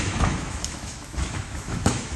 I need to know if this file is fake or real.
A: fake